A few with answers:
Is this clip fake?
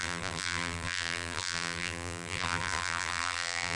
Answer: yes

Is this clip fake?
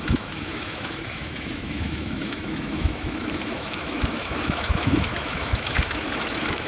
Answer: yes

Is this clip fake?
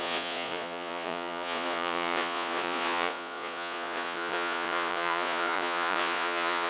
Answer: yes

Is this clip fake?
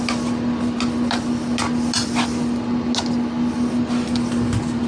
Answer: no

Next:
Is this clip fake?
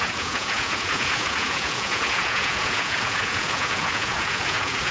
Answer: yes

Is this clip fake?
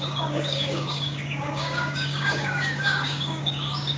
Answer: yes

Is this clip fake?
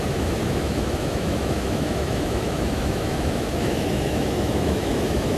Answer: yes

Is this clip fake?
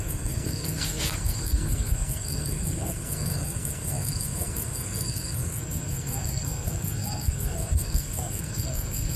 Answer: yes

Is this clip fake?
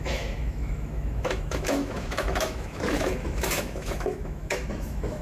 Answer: yes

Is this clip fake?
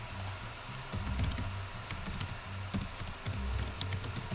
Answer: no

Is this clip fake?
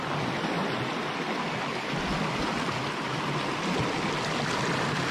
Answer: no